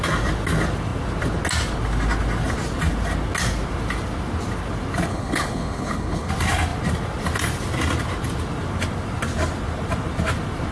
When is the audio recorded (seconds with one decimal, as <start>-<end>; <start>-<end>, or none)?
0.0-5.1; 6.3-10.7